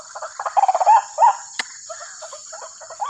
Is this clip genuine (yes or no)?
no